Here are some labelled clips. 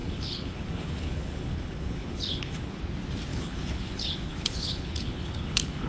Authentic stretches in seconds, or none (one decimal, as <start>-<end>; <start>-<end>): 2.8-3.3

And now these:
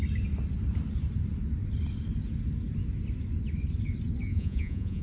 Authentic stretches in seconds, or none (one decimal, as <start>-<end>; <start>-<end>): 0.0-4.3

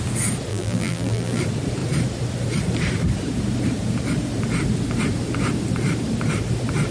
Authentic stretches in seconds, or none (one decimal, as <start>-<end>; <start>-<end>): 0.0-0.5; 1.4-6.9

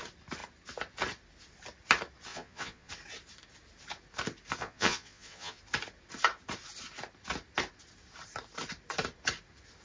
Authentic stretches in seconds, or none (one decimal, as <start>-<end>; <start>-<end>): 0.0-2.3; 2.9-4.6; 5.6-9.8

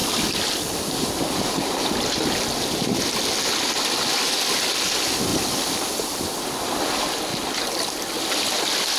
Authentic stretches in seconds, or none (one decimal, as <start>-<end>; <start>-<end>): 0.0-9.0